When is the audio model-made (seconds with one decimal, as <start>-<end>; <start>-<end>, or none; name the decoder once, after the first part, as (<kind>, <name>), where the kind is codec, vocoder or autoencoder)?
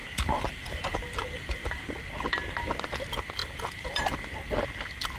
0.0-2.0 (vocoder, BigVGAN v2); 3.4-4.2